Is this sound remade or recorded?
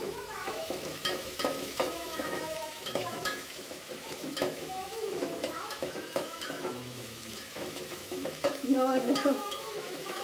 remade